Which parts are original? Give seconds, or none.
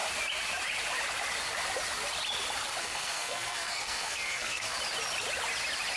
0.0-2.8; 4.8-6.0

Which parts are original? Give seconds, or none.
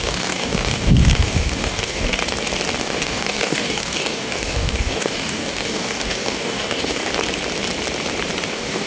2.2-2.8; 7.1-8.5